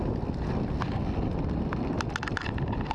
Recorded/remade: recorded